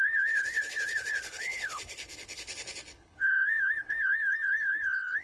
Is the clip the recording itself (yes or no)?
no